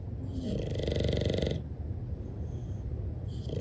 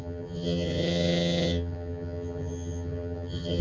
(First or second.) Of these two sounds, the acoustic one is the first